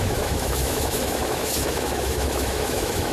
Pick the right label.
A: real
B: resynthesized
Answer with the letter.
B